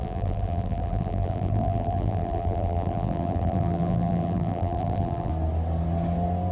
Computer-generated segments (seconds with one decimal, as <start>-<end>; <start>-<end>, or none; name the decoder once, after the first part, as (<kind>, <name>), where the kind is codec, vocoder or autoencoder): 0.0-5.3 (vocoder, BigVGAN v2)

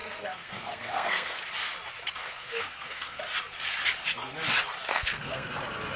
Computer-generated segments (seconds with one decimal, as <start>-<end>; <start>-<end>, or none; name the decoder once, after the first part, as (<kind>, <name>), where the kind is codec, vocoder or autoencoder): 0.0-1.4 (codec, SNAC); 2.2-3.2; 4.9-5.5

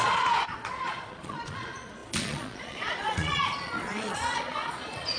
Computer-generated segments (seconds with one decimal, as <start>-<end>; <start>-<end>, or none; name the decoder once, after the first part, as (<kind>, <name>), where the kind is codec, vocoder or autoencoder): 0.0-5.2 (vocoder, Vocos)

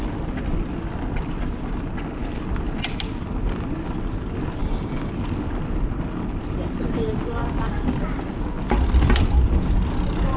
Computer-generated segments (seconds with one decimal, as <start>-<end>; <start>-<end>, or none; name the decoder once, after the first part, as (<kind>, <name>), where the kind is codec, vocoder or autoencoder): 4.6-5.1 (codec, DAC)

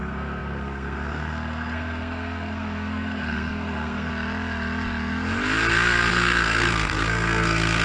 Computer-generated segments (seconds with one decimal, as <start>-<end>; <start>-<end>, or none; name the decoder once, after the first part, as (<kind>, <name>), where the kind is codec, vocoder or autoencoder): 0.0-4.1 (codec, SNAC); 6.1-7.8

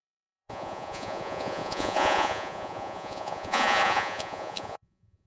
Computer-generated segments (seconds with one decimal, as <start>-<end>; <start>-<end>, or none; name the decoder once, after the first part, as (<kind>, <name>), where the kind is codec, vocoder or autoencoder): 0.0-5.3 (vocoder, Vocos)

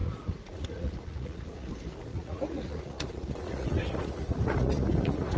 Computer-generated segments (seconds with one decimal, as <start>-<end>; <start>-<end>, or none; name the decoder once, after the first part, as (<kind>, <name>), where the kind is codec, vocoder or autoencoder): 0.0-1.7 (vocoder, Vocos); 2.1-5.4

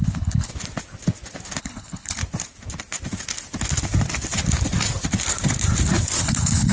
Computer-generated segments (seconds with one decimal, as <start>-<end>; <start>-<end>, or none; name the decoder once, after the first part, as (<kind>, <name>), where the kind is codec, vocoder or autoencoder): 0.0-0.5 (codec, HILCodec); 1.6-2.2; 6.2-6.7